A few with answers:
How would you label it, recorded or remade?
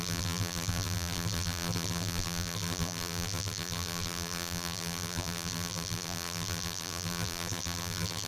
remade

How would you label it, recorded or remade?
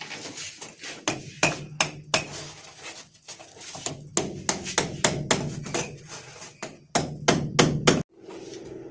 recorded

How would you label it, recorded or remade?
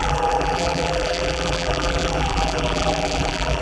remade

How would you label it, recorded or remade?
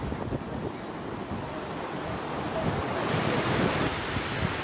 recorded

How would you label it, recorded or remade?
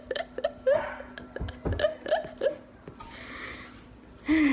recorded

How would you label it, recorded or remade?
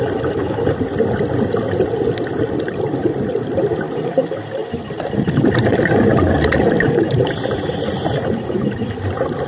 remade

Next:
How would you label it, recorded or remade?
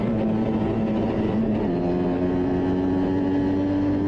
recorded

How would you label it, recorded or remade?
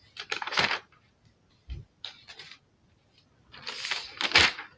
recorded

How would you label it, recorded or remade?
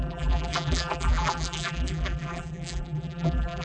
remade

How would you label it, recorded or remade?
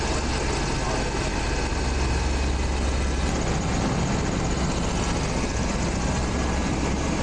recorded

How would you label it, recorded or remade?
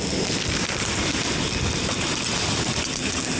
recorded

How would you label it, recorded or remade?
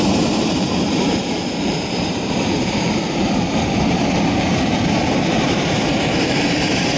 remade